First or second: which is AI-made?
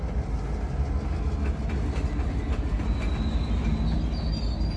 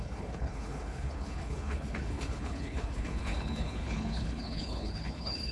second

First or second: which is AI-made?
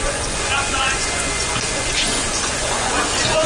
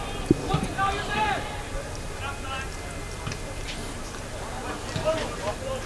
first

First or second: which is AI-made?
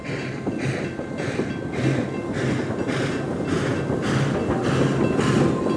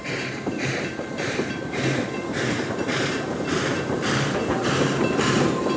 second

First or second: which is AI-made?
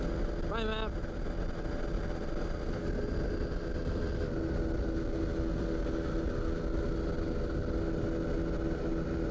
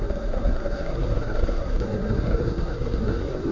second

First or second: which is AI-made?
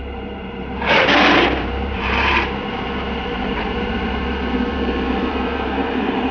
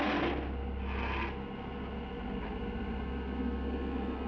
first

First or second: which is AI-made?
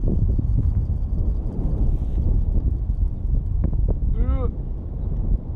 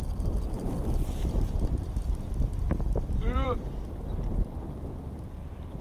second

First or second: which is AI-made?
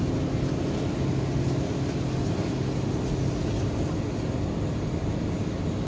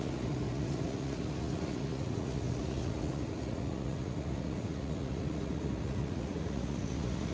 second